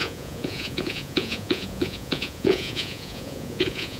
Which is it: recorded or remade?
remade